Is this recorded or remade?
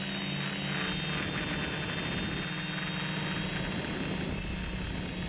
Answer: recorded